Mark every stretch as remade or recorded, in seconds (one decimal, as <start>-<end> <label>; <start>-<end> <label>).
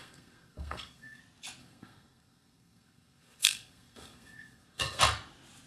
0.0-1.2 remade; 1.2-1.6 recorded; 1.6-5.0 remade; 5.0-5.7 recorded